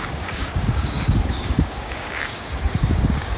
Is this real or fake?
fake